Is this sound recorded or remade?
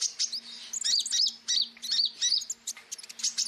recorded